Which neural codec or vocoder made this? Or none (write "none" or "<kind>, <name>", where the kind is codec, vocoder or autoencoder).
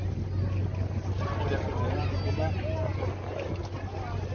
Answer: none